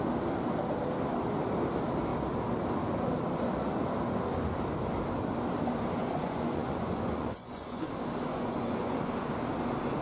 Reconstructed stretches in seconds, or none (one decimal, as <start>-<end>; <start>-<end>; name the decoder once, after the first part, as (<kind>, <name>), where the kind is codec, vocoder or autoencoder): 6.0-7.9 (vocoder, Vocos); 8.3-9.1